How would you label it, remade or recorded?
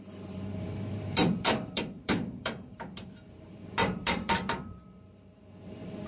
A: remade